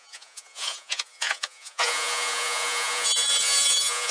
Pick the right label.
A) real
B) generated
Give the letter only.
B